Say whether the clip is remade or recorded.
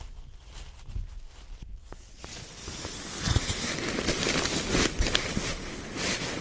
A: recorded